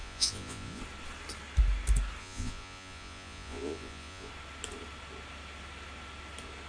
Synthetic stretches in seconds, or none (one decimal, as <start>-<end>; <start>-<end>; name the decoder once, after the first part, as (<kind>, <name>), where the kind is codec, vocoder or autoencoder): 0.0-0.8 (vocoder, Vocos); 2.2-4.3